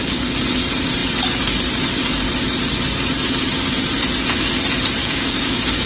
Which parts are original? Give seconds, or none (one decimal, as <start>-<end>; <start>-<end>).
0.0-5.0